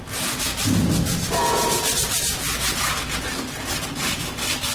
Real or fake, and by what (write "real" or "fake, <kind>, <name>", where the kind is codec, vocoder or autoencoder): real